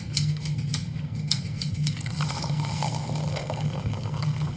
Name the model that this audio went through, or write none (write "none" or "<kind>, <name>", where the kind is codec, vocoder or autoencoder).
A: codec, SNAC